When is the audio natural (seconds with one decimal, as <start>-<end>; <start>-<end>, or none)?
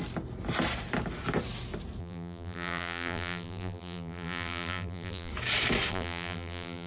0.0-2.0; 5.3-5.9